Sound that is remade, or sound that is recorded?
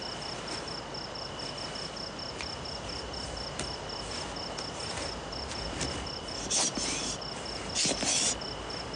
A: recorded